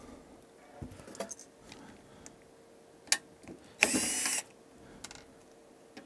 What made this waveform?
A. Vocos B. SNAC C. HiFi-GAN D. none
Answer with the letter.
D